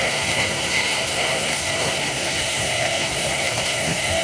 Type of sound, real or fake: fake